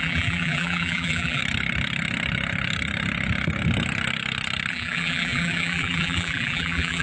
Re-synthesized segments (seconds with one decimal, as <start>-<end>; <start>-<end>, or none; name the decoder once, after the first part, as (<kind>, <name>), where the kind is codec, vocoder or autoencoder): 0.0-1.4 (vocoder, BigVGAN v2); 4.7-7.0